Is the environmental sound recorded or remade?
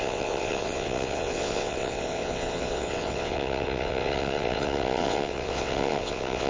remade